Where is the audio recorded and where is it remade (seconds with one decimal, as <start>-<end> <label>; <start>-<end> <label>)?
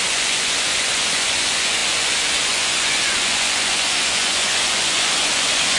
0.0-5.8 remade